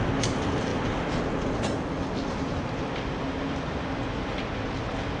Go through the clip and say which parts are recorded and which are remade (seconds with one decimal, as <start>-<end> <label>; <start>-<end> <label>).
0.0-5.2 recorded

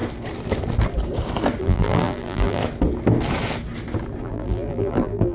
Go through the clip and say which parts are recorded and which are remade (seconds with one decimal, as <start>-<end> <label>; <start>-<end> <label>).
0.0-1.6 recorded; 1.6-2.6 remade; 2.6-4.2 recorded; 4.2-5.3 remade

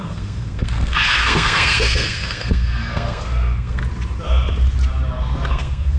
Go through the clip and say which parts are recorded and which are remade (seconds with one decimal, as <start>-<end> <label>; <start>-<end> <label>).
0.0-3.8 remade; 3.8-5.5 recorded; 5.5-6.0 remade

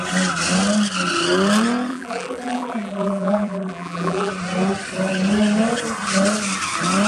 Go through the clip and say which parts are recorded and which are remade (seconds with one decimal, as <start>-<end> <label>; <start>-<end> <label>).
0.0-1.9 recorded; 1.9-4.3 remade; 4.3-7.1 recorded

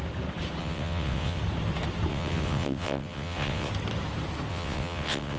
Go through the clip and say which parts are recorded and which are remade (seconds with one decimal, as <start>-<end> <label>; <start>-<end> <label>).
0.0-0.6 recorded; 0.6-1.4 remade; 1.4-2.1 recorded; 2.1-3.7 remade; 3.7-4.5 recorded; 4.5-5.4 remade

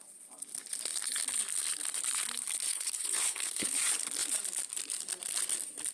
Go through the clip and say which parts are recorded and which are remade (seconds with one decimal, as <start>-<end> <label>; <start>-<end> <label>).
0.0-2.7 recorded; 2.7-3.8 remade; 3.8-5.9 recorded

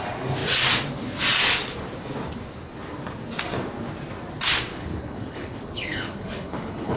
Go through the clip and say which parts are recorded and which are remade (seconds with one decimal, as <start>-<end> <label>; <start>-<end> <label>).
0.0-4.7 recorded; 4.7-7.0 remade